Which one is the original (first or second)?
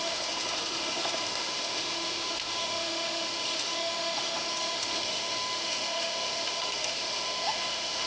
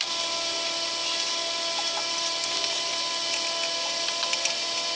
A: second